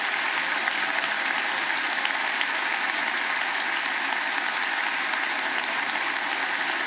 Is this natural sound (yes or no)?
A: yes